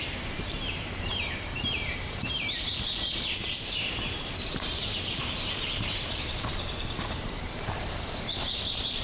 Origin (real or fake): fake